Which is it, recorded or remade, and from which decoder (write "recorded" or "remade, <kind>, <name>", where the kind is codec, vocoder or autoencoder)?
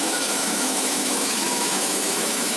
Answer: remade, autoencoder, DAC-VAE